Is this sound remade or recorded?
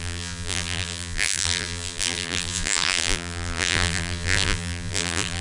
remade